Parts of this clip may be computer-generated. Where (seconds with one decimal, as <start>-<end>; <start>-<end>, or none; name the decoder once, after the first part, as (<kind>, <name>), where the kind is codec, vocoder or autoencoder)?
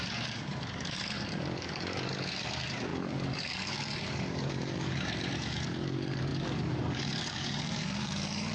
0.0-8.5 (codec, DAC)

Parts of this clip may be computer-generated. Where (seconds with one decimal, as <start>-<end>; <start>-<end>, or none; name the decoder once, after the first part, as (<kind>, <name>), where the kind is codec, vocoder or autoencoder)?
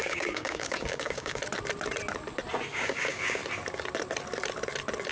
0.0-1.4 (codec, DAC); 2.7-3.4